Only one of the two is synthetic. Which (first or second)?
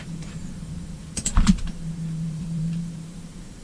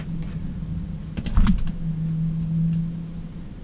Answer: first